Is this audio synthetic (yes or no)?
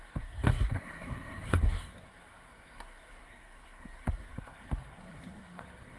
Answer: yes